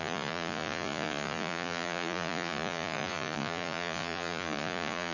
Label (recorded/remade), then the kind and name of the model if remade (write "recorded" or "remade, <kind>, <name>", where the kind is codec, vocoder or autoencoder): remade, vocoder, Vocos